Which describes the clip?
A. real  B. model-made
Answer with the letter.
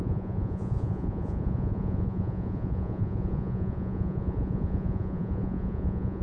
B